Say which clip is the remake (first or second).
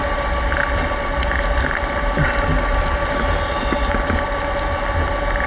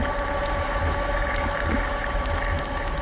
second